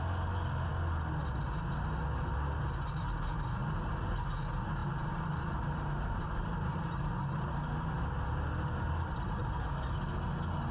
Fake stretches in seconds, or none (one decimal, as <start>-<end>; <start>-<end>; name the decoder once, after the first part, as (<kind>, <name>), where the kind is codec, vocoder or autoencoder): 4.8-9.9 (vocoder, BigVGAN v2)